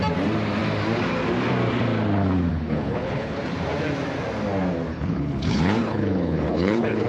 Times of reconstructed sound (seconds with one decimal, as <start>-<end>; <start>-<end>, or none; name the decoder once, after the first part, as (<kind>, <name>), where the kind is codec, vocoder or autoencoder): 2.5-3.4 (codec, HILCodec); 4.9-7.1

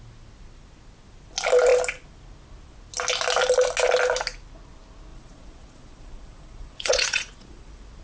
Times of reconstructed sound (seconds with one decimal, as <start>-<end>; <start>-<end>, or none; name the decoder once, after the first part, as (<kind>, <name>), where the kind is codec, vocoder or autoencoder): 5.1-8.0 (vocoder, Vocos)

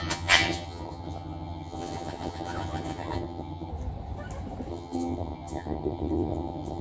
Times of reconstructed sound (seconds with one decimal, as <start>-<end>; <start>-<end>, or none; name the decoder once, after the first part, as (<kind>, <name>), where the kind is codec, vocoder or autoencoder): 0.0-3.7 (vocoder, HiFi-GAN); 4.7-6.8

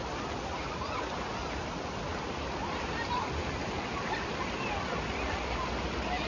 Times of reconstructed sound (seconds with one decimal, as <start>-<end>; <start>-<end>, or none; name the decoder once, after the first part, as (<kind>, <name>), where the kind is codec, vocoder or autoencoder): 2.1-5.1 (vocoder, BigVGAN v2)

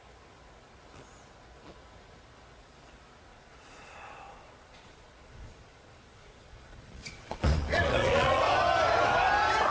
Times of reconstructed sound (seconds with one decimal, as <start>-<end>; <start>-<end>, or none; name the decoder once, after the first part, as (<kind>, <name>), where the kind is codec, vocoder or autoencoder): 3.3-8.4 (vocoder, Vocos)

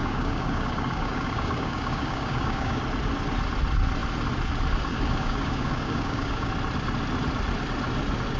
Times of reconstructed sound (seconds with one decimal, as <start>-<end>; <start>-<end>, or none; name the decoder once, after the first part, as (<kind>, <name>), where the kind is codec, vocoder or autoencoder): 0.0-2.8 (codec, DAC); 4.9-6.5